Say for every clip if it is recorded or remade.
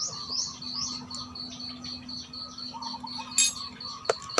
recorded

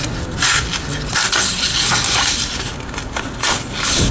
recorded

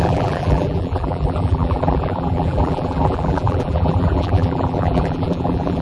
remade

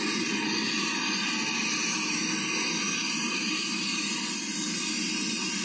recorded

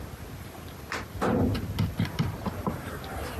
recorded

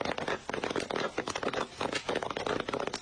recorded